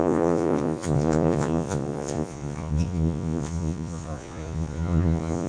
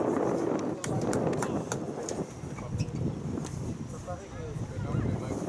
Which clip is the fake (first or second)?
first